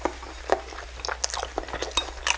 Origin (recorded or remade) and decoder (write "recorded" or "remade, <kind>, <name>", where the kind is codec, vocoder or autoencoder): recorded